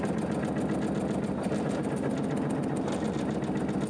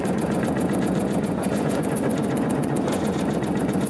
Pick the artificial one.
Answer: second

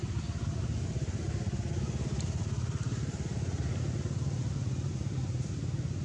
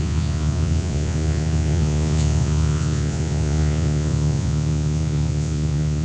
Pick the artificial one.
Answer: second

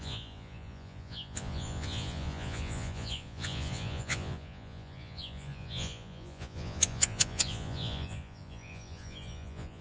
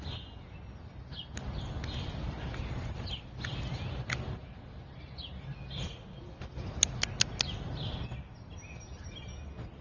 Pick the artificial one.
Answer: first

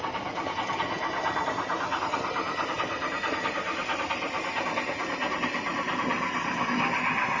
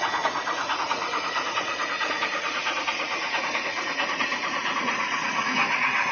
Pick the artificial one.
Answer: second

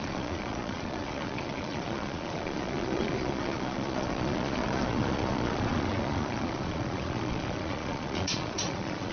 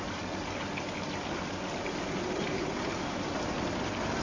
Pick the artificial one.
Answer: first